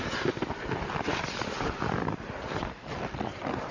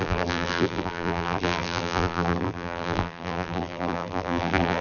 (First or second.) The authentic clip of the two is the first